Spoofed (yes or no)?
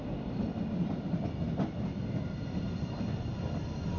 no